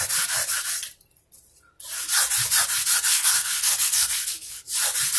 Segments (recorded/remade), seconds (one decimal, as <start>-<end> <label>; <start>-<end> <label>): 0.0-3.1 recorded; 3.1-4.6 remade; 4.6-5.2 recorded